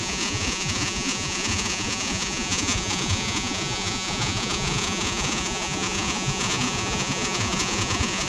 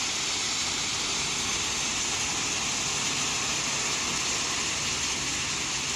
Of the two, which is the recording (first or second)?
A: second